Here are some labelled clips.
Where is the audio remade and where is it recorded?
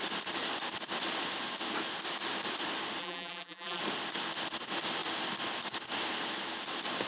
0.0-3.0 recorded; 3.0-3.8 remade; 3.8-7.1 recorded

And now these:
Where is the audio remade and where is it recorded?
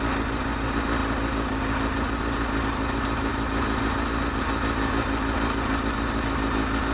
0.0-6.9 recorded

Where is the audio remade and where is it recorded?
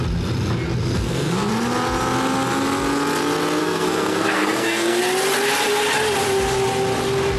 0.0-0.8 recorded; 0.8-1.5 remade; 1.5-3.6 recorded; 3.6-5.0 remade; 5.0-7.4 recorded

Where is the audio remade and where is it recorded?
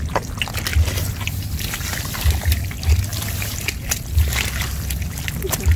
0.0-0.7 recorded; 0.7-2.7 remade; 2.7-3.1 recorded; 3.1-4.1 remade; 4.1-5.8 recorded